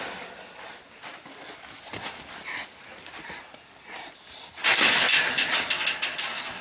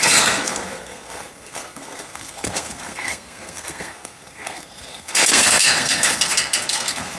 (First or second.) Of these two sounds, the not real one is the second